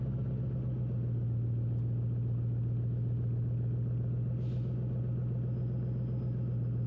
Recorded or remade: recorded